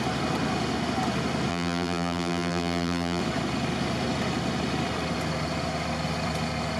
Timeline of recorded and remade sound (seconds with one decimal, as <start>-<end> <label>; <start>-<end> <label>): 0.0-1.5 recorded; 1.5-3.2 remade; 3.2-6.8 recorded